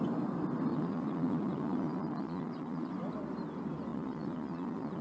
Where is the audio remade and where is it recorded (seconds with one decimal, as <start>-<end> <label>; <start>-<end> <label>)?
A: 0.0-0.7 recorded; 0.7-2.9 remade; 2.9-3.9 recorded; 3.9-5.0 remade